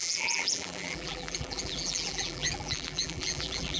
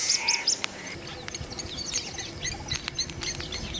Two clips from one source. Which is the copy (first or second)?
first